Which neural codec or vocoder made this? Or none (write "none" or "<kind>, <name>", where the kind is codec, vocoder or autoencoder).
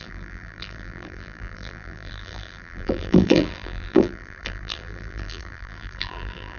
vocoder, BigVGAN v2